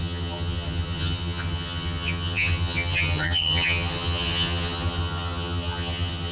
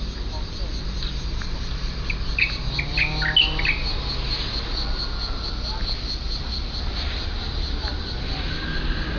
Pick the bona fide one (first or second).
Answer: second